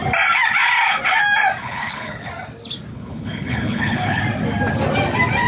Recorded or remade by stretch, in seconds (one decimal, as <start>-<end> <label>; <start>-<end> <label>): 0.0-1.6 recorded; 1.6-2.3 remade; 2.3-2.9 recorded; 2.9-4.2 remade; 4.2-5.5 recorded